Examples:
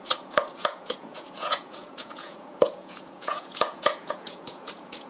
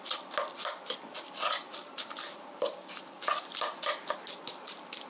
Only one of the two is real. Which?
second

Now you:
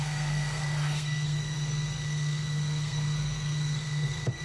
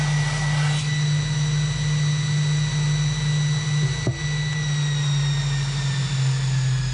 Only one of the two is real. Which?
second